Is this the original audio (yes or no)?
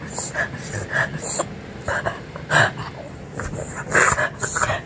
yes